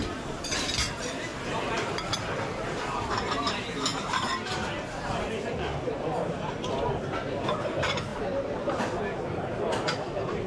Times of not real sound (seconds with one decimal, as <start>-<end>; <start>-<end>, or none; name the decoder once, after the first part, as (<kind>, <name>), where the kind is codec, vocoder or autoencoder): 1.3-3.1 (vocoder, BigVGAN v2); 8.1-9.0